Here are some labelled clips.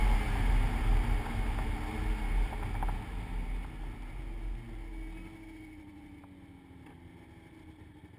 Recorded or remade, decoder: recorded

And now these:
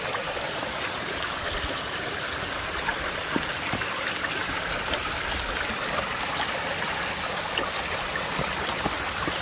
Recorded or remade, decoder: recorded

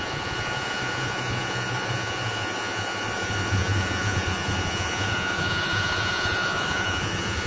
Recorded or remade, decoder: remade, vocoder, Vocos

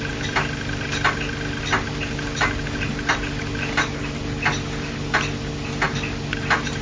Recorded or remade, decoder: recorded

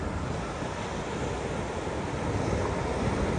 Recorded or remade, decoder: recorded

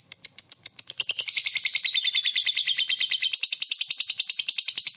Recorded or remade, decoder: recorded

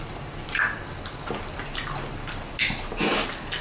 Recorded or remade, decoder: recorded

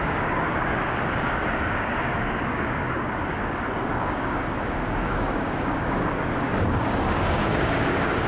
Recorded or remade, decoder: remade, codec, DAC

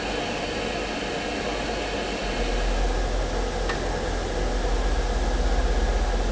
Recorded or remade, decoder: recorded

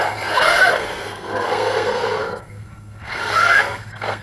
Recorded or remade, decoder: remade, codec, SNAC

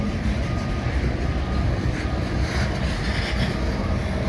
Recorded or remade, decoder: recorded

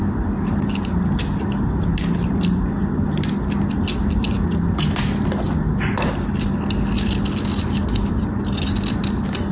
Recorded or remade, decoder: recorded